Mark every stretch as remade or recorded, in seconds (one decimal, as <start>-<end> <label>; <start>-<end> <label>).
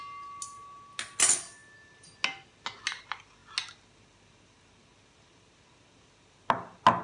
0.0-7.0 recorded